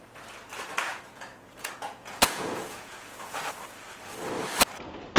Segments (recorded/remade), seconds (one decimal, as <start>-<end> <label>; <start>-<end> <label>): 0.0-0.9 recorded; 0.9-3.4 remade; 3.4-5.2 recorded